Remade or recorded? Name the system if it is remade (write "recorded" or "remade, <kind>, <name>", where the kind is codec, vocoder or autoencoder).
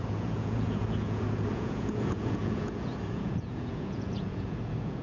remade, vocoder, Vocos